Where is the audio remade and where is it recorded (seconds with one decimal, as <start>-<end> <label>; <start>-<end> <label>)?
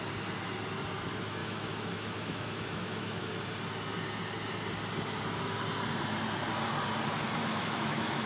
0.0-1.4 recorded; 1.4-3.3 remade; 3.3-7.4 recorded; 7.4-8.3 remade